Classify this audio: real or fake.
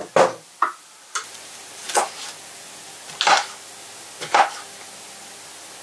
real